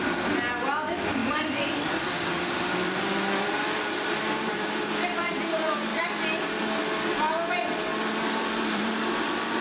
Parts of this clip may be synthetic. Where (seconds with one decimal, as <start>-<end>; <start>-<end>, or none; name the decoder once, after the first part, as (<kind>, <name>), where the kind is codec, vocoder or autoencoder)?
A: 1.2-4.7 (vocoder, BigVGAN v2); 7.9-8.9